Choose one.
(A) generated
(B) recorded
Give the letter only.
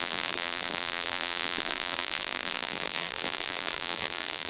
A